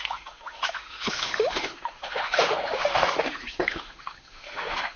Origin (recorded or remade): remade